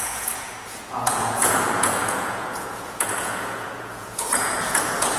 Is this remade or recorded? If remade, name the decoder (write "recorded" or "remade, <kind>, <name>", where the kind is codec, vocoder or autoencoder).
remade, vocoder, Vocos